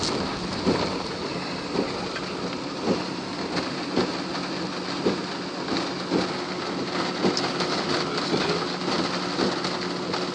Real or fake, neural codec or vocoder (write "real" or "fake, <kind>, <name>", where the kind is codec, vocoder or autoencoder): real